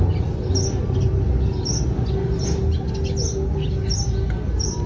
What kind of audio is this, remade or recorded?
recorded